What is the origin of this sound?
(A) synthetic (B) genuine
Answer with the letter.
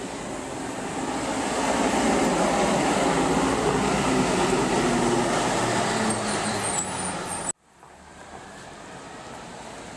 B